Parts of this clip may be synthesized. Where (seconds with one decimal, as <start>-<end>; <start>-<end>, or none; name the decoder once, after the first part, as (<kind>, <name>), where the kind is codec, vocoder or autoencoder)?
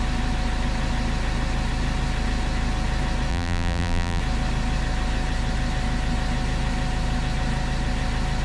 3.3-4.2 (vocoder, BigVGAN v2)